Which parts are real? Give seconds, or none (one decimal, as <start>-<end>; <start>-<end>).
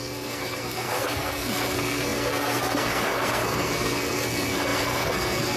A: none